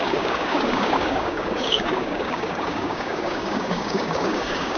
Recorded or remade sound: remade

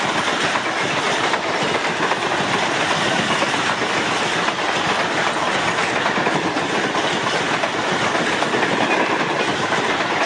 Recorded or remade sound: recorded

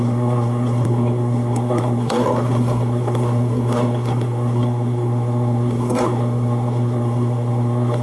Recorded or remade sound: remade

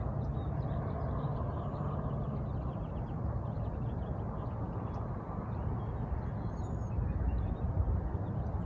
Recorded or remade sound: recorded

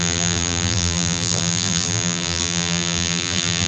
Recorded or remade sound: remade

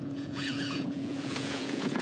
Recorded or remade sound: remade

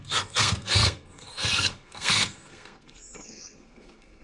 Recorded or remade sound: remade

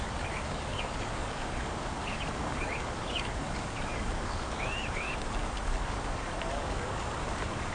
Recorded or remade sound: remade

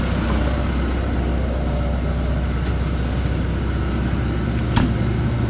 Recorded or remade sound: recorded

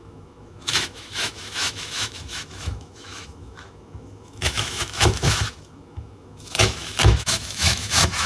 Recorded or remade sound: remade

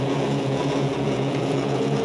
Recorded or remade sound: remade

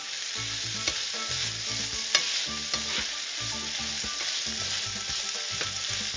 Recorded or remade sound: recorded